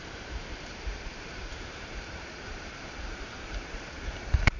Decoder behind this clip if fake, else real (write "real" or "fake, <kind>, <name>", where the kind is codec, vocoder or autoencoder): fake, vocoder, BigVGAN v2